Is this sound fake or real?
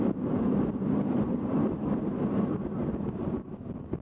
real